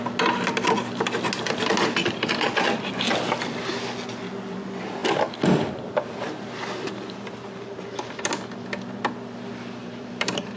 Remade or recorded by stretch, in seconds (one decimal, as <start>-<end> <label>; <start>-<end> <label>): 0.0-9.8 recorded; 9.8-10.6 remade

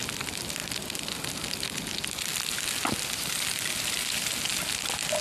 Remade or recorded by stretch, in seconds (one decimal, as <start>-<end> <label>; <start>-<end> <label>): 0.0-5.2 recorded

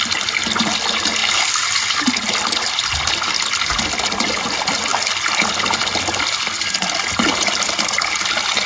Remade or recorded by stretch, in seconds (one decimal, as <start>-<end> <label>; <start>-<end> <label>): 0.0-8.7 recorded

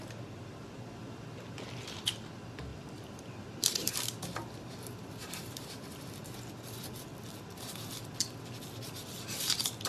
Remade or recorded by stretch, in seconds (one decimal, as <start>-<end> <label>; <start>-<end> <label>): 0.0-2.7 recorded; 2.7-3.9 remade; 3.9-5.2 recorded; 5.2-6.4 remade; 6.4-9.9 recorded